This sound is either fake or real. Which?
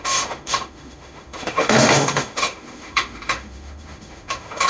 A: fake